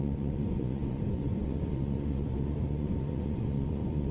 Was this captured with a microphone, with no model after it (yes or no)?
no